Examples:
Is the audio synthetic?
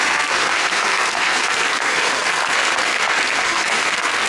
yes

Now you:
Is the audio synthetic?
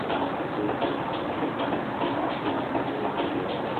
no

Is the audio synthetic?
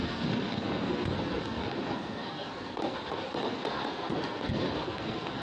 yes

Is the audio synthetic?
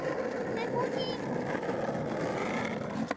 no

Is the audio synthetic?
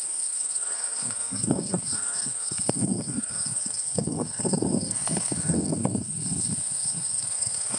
yes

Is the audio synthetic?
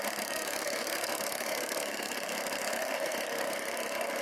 yes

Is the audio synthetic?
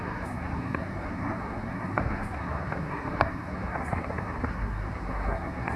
yes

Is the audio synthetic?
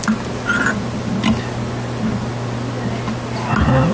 no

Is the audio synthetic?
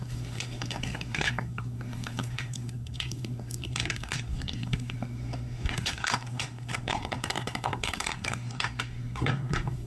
yes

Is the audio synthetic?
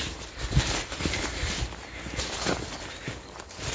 no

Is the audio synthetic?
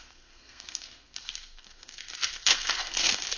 yes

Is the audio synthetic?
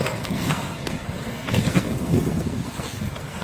yes